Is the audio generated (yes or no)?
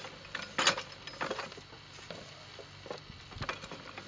no